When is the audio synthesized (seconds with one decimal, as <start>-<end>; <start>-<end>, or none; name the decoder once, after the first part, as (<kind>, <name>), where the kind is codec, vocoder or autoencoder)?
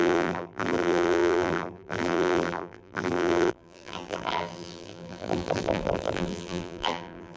0.0-7.4 (vocoder, BigVGAN v2)